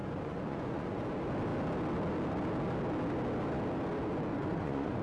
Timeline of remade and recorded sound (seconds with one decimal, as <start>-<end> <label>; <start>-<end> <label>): 0.0-1.0 remade; 1.0-4.3 recorded; 4.3-5.0 remade